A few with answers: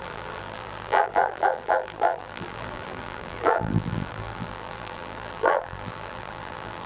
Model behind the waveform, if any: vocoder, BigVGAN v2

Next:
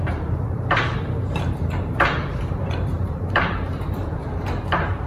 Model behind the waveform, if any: vocoder, BigVGAN v2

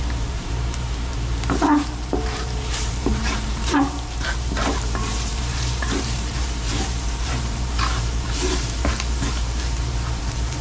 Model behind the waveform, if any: vocoder, BigVGAN v2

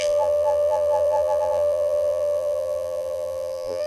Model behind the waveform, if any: vocoder, BigVGAN v2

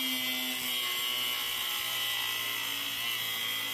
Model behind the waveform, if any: none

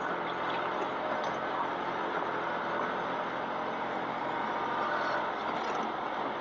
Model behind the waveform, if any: none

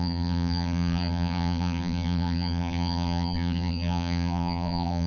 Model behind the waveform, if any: vocoder, BigVGAN v2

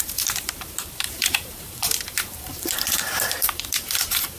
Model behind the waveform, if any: vocoder, BigVGAN v2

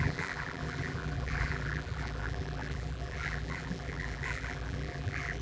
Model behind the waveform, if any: vocoder, BigVGAN v2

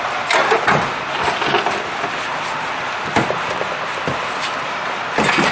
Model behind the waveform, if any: vocoder, BigVGAN v2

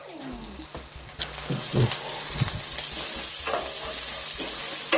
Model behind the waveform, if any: none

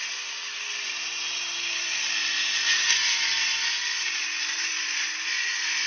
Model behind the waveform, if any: none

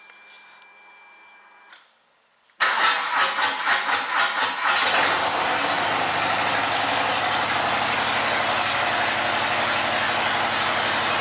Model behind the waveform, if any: none